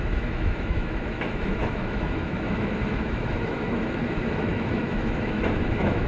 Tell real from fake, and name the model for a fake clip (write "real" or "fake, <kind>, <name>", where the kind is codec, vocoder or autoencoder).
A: fake, autoencoder, DAC-VAE